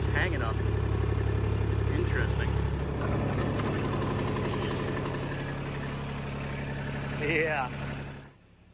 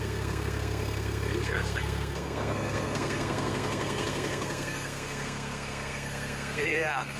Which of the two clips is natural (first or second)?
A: first